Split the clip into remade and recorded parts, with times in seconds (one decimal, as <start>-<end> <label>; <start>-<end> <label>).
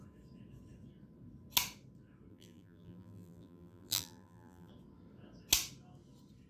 0.0-2.3 recorded; 2.3-4.7 remade; 4.7-6.5 recorded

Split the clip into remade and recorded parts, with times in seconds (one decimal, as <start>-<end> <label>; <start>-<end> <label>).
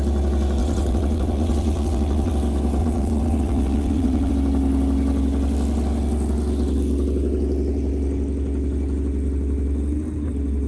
0.0-0.6 recorded; 0.6-2.3 remade; 2.3-2.8 recorded; 2.8-4.3 remade; 4.3-10.7 recorded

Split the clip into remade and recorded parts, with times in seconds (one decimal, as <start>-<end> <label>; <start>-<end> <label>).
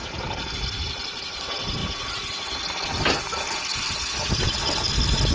0.0-5.3 recorded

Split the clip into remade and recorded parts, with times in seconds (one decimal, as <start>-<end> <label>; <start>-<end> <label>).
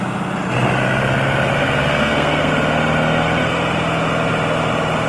0.0-1.6 recorded; 1.6-2.5 remade; 2.5-5.1 recorded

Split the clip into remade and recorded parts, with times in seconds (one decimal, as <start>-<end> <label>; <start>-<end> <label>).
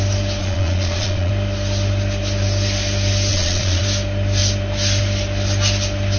0.0-0.4 recorded; 0.4-1.3 remade; 1.3-3.3 recorded; 3.3-3.8 remade; 3.8-6.2 recorded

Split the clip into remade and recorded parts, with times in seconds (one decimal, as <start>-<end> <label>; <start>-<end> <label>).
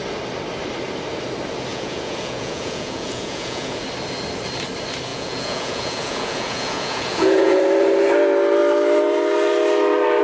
0.0-1.7 recorded; 1.7-3.8 remade; 3.8-5.1 recorded; 5.1-7.6 remade; 7.6-10.2 recorded